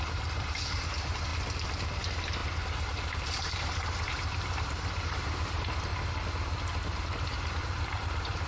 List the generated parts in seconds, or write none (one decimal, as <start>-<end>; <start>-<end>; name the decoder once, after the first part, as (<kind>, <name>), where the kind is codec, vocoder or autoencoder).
0.0-1.3 (vocoder, BigVGAN v2); 2.0-5.9; 7.0-8.5